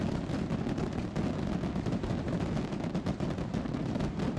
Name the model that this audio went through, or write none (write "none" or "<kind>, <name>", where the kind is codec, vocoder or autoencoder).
none